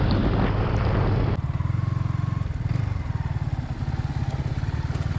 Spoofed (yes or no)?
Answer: no